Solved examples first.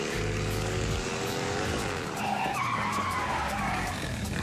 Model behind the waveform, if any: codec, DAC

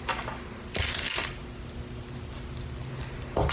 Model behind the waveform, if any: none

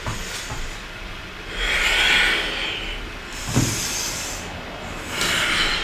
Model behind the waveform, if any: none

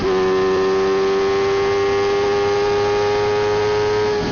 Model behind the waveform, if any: none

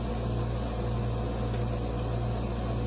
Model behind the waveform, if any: none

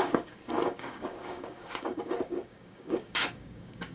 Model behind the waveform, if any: codec, DAC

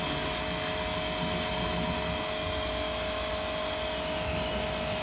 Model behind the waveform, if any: none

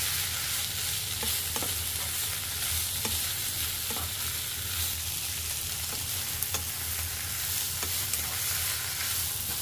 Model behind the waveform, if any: none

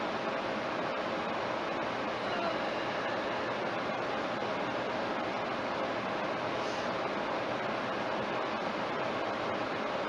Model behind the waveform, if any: none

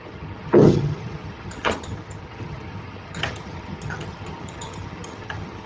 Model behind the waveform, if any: vocoder, HiFi-GAN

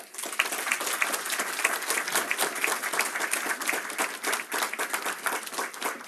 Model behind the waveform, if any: none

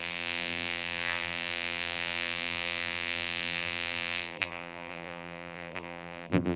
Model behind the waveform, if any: vocoder, BigVGAN v2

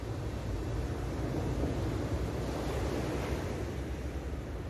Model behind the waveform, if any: none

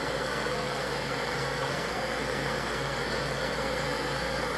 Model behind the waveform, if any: codec, SNAC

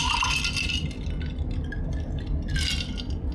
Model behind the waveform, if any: none